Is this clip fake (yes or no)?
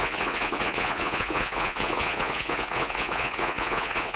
yes